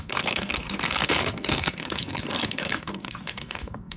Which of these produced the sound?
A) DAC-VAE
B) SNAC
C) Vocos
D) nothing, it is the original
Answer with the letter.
B